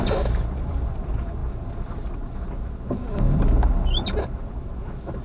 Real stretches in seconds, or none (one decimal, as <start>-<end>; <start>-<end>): 0.0-5.2